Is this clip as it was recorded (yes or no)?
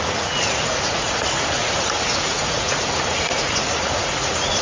no